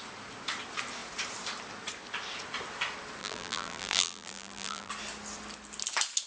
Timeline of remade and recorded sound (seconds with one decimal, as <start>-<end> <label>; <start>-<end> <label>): 0.0-3.2 recorded; 3.2-4.9 remade; 4.9-6.3 recorded